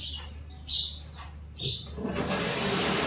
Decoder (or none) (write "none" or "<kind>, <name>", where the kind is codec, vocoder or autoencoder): none